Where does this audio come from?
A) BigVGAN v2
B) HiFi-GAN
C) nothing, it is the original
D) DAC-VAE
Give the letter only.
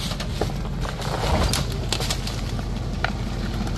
C